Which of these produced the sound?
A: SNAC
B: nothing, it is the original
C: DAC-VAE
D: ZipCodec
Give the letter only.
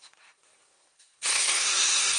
A